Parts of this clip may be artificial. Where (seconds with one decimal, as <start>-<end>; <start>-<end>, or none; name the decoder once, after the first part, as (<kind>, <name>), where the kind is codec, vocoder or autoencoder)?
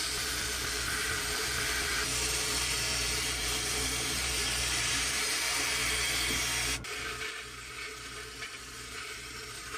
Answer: 0.0-5.8 (vocoder, BigVGAN v2); 8.7-9.8